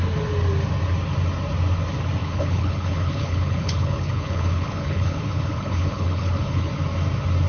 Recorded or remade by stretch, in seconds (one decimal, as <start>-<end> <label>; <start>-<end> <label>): 0.0-2.2 recorded; 2.2-6.7 remade; 6.7-7.5 recorded